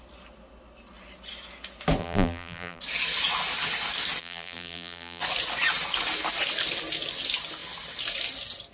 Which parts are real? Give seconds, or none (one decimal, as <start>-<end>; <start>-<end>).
0.0-2.0; 2.8-4.2; 5.2-8.7